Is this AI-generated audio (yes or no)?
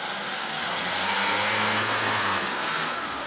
yes